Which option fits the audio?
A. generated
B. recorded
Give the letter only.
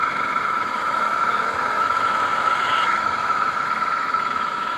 A